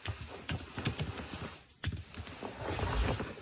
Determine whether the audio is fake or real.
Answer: real